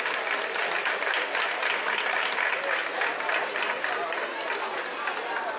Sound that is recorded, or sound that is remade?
recorded